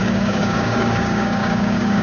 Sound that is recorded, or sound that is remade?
remade